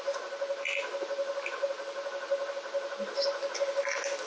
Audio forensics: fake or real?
real